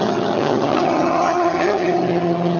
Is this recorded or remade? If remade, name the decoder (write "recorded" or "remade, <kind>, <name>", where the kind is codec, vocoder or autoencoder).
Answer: remade, vocoder, HiFi-GAN